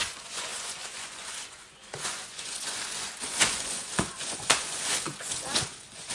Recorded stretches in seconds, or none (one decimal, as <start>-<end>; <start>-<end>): none